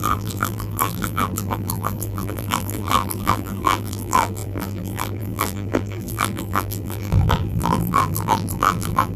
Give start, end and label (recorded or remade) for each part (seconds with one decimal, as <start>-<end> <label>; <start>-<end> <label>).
0.0-9.2 remade

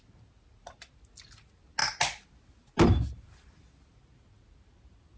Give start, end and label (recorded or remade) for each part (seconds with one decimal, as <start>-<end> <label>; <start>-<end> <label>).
0.0-5.2 recorded